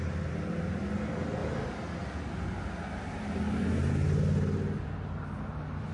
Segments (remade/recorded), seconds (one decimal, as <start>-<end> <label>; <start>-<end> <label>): 0.0-5.9 recorded